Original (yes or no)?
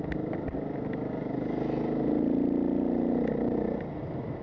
yes